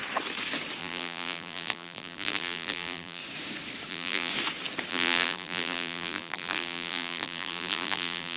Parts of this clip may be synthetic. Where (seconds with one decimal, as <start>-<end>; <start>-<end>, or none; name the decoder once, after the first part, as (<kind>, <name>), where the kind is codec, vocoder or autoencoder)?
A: 0.8-3.2 (vocoder, BigVGAN v2); 3.9-4.3; 4.9-8.4